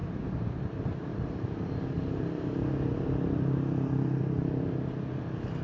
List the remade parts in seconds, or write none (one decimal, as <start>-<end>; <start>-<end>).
0.0-0.6